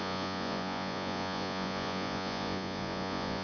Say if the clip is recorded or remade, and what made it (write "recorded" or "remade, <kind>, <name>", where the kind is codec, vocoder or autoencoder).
remade, vocoder, Vocos